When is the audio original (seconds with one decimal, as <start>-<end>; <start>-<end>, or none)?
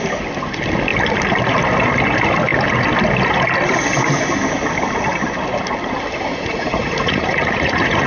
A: 0.0-6.3